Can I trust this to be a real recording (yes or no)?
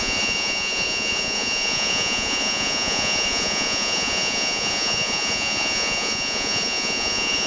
no